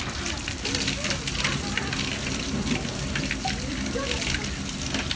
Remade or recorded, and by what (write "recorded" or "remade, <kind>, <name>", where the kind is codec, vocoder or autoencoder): recorded